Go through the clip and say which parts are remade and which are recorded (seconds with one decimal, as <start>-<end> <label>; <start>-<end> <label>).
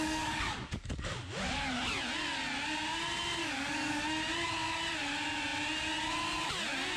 0.0-0.8 remade; 0.8-3.4 recorded; 3.4-4.0 remade; 4.0-7.0 recorded